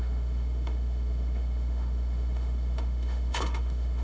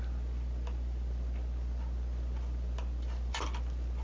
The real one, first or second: second